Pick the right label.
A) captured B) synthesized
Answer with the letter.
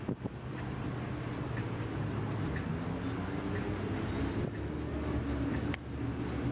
A